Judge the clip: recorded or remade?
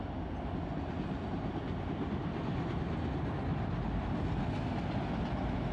recorded